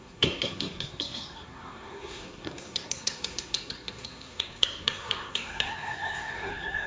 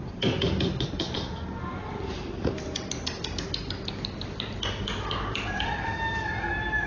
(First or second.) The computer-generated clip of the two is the first